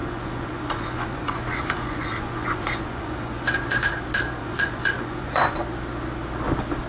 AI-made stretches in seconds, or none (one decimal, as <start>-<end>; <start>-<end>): 0.0-4.0; 4.4-5.6